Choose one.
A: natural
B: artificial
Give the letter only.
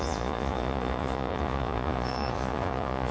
B